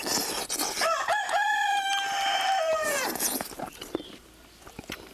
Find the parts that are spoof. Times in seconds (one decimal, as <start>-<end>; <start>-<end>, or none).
1.2-4.3